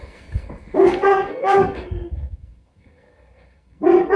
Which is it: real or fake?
fake